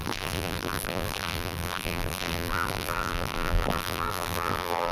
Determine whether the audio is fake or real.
fake